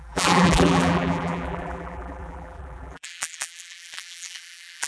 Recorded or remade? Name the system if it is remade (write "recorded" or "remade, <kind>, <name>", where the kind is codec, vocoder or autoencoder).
remade, vocoder, BigVGAN v2